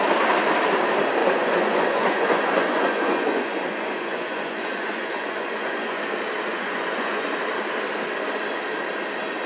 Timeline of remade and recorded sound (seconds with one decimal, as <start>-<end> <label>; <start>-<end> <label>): 0.0-1.2 recorded; 1.2-6.0 remade; 6.0-6.5 recorded; 6.5-7.4 remade; 7.4-9.5 recorded